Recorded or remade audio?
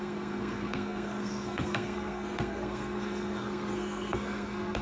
remade